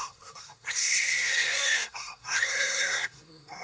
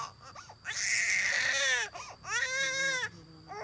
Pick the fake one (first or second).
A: first